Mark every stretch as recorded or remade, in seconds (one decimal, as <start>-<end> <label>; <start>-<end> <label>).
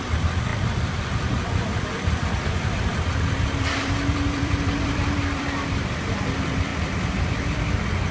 0.0-8.1 remade